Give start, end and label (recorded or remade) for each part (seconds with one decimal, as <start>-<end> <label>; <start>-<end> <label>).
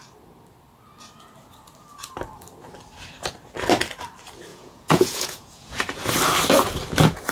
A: 0.0-4.5 recorded; 4.5-5.8 remade; 5.8-7.3 recorded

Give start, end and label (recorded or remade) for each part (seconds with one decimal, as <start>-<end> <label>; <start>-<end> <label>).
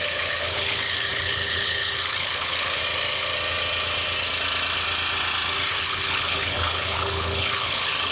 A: 0.0-2.8 remade; 2.8-5.7 recorded; 5.7-8.1 remade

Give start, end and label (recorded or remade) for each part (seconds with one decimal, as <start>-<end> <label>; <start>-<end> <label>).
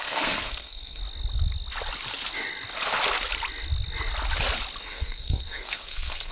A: 0.0-1.0 remade; 1.0-4.8 recorded; 4.8-6.3 remade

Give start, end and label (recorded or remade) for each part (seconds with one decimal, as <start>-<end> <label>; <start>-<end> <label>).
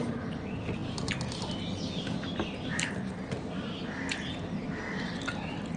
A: 0.0-5.8 recorded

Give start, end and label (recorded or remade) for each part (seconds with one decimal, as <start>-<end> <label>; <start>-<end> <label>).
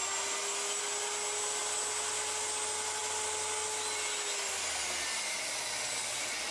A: 0.0-6.5 recorded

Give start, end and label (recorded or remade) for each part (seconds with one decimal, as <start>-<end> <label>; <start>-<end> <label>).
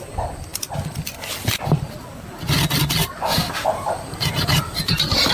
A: 0.0-3.3 recorded; 3.3-5.3 remade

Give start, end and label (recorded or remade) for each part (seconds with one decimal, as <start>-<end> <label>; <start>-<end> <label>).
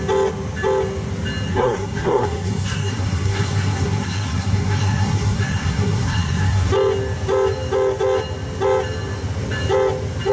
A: 0.0-1.5 recorded; 1.5-6.7 remade; 6.7-10.3 recorded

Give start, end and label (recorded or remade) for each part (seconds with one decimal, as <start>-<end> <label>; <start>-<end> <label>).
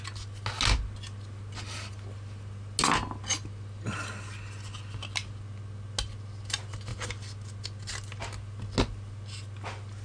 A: 0.0-10.0 recorded